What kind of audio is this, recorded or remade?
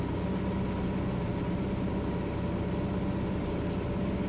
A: recorded